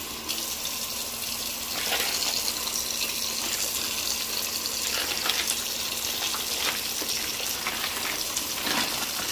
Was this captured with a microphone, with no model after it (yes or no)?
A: yes